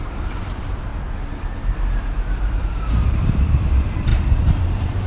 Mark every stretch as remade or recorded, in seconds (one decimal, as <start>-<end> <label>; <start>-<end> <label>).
0.0-0.9 remade; 0.9-2.9 recorded; 2.9-5.1 remade

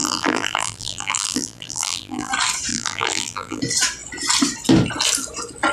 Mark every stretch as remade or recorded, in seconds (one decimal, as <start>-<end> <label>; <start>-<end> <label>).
0.0-2.3 remade; 2.3-2.7 recorded; 2.7-3.6 remade; 3.6-5.7 recorded

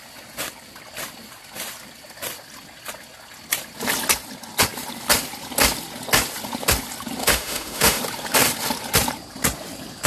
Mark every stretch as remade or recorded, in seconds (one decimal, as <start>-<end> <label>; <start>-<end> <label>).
0.0-7.2 recorded; 7.2-8.0 remade; 8.0-10.1 recorded

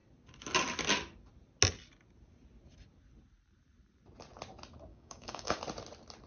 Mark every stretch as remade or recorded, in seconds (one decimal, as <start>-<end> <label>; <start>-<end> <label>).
0.0-4.9 recorded; 4.9-5.6 remade; 5.6-6.3 recorded

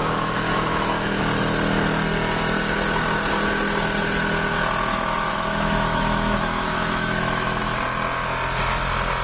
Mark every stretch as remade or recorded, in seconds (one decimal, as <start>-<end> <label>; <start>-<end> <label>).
0.0-1.2 remade; 1.2-4.9 recorded; 4.9-7.8 remade; 7.8-9.2 recorded

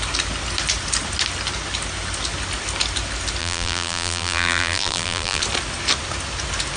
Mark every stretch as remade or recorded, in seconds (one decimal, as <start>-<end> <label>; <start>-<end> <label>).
0.0-3.4 recorded; 3.4-5.4 remade; 5.4-6.8 recorded

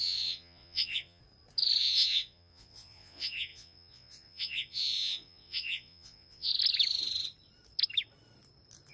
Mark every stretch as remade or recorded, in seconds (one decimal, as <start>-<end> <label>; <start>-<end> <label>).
0.0-1.2 remade; 1.2-1.8 recorded; 1.8-6.5 remade; 6.5-8.9 recorded

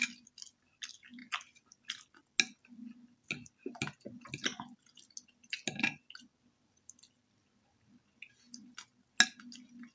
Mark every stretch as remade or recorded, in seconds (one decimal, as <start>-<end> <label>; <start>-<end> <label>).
0.0-9.9 recorded